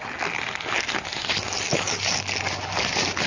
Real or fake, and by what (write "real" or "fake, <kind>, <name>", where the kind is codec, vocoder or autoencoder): real